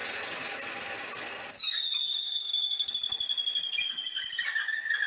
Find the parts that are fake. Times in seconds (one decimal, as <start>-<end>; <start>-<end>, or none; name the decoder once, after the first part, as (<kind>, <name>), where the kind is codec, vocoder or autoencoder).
2.2-2.9 (codec, SNAC)